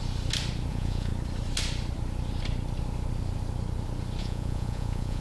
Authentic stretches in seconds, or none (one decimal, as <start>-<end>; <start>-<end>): 0.0-0.7; 1.1-4.2